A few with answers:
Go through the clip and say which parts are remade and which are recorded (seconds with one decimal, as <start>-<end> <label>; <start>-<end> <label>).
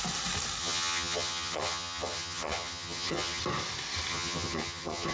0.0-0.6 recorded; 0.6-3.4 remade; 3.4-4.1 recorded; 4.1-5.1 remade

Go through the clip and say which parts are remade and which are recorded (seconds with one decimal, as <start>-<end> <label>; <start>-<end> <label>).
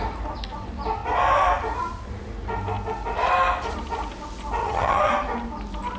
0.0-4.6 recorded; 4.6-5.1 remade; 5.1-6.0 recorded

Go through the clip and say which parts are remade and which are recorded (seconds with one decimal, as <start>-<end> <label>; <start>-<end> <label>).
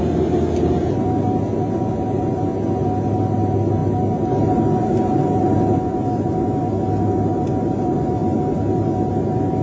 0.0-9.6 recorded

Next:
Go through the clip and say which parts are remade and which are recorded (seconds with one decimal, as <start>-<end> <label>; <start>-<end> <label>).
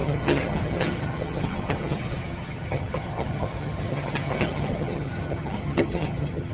0.0-6.5 remade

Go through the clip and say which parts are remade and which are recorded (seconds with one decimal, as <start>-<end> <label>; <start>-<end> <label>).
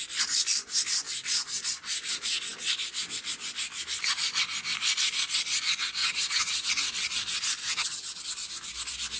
0.0-6.0 recorded; 6.0-6.7 remade; 6.7-7.6 recorded; 7.6-8.2 remade; 8.2-9.2 recorded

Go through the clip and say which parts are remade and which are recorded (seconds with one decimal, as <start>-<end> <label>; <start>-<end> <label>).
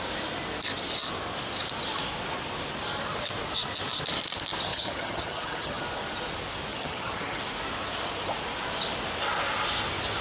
0.0-4.7 recorded; 4.7-5.8 remade; 5.8-6.7 recorded; 6.7-7.4 remade; 7.4-10.2 recorded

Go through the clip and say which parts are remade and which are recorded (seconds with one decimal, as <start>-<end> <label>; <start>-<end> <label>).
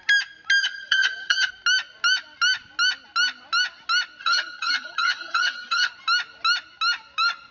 0.0-0.6 recorded; 0.6-1.5 remade; 1.5-4.2 recorded; 4.2-5.9 remade; 5.9-7.5 recorded